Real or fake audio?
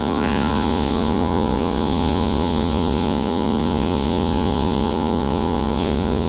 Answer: fake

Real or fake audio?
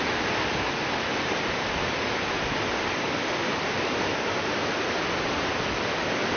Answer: real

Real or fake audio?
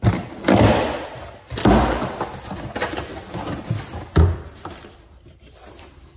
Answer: real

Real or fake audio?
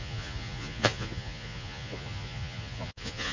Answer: fake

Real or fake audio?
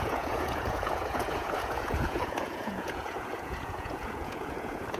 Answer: fake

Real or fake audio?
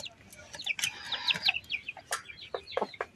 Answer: real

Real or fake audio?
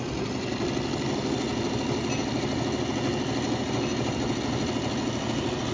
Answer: real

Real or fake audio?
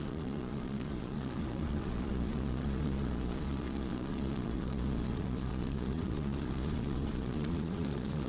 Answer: fake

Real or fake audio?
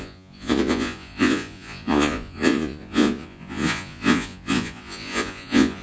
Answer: fake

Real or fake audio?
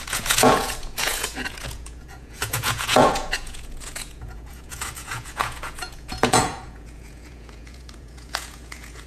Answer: fake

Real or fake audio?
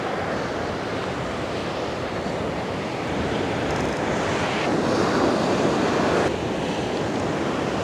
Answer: real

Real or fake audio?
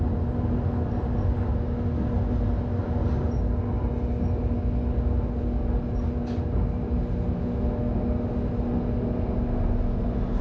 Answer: real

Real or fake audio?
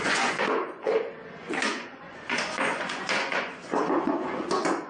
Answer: fake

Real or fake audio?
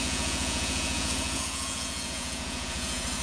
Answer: fake